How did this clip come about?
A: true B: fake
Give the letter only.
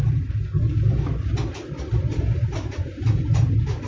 A